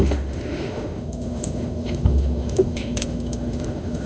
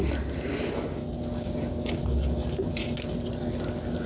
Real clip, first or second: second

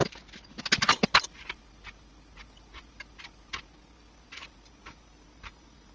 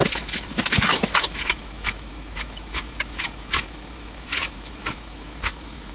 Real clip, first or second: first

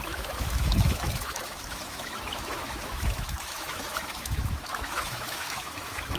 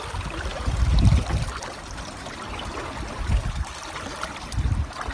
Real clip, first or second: second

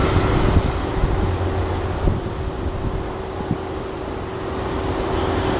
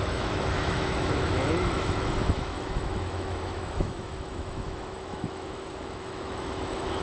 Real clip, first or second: first